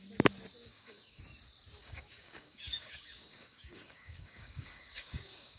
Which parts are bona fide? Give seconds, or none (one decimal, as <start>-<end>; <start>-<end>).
0.0-0.7; 1.2-1.8